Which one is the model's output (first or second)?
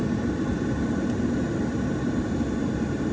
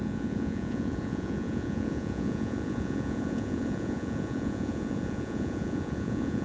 second